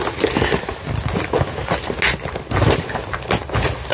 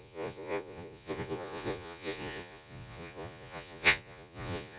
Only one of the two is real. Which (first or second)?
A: first